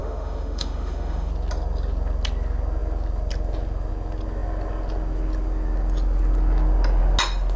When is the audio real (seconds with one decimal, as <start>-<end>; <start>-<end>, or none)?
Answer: 1.3-7.6